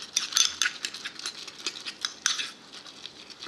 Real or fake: real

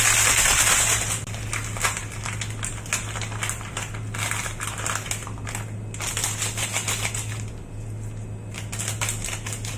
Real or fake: real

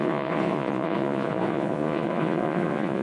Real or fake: fake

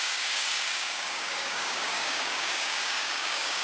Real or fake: fake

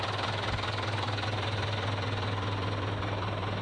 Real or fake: real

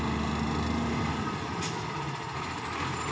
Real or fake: real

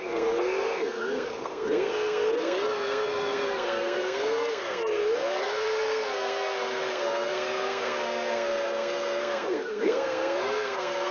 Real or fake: fake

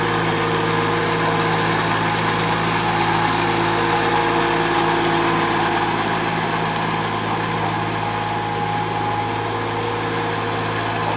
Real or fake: real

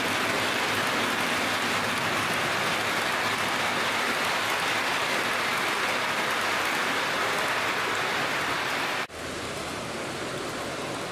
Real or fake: real